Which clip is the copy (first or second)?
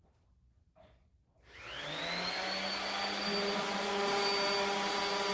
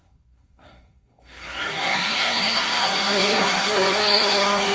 second